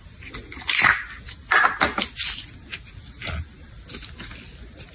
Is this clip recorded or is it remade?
recorded